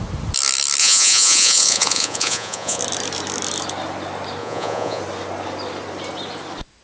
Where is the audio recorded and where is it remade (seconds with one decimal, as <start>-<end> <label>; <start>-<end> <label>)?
0.0-0.8 recorded; 0.8-2.8 remade; 2.8-4.4 recorded; 4.4-5.0 remade; 5.0-6.8 recorded